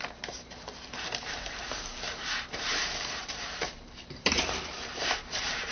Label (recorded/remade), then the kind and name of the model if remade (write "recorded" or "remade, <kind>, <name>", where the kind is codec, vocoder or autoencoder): remade, vocoder, BigVGAN v2